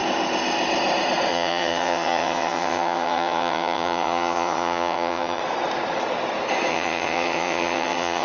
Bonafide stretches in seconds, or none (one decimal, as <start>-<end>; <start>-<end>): 0.0-1.3; 5.4-6.7